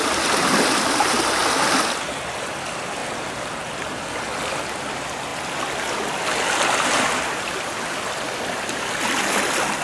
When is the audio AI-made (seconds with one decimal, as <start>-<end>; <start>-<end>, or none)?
none